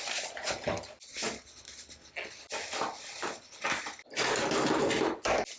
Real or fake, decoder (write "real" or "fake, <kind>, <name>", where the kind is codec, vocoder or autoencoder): real